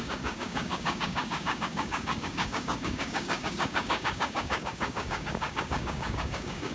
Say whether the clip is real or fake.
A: fake